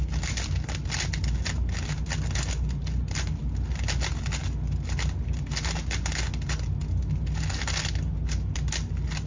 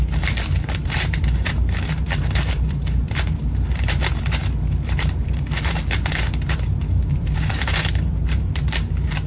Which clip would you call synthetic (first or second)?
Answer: second